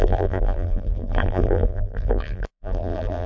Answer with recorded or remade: remade